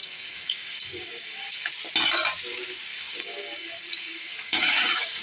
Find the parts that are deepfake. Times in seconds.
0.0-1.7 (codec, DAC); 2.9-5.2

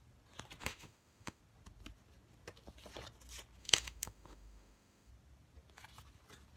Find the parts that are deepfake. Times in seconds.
0.6-1.4 (autoencoder, DAC-VAE); 3.6-5.1

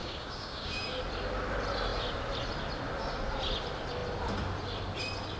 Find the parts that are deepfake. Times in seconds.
0.0-1.0 (codec, DAC)